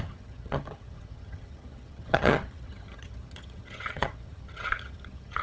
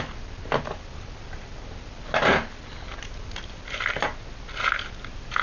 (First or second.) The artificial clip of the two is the first